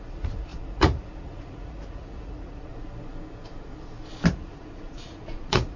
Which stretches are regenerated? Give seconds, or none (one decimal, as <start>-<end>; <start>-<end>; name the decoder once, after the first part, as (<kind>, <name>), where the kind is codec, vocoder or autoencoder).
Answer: 0.0-2.7 (vocoder, Vocos); 4.3-5.8